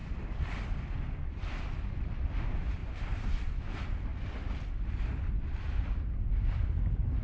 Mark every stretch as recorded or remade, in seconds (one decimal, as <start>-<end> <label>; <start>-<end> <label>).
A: 0.0-2.8 recorded; 2.8-3.6 remade; 3.6-7.2 recorded